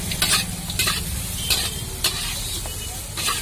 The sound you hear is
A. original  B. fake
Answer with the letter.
A